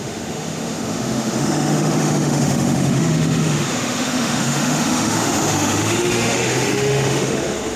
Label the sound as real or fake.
fake